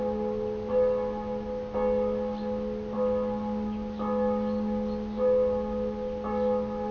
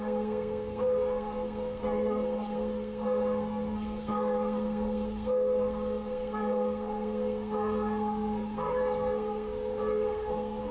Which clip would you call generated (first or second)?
second